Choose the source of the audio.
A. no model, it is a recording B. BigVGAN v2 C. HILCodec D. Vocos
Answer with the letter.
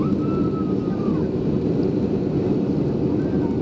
A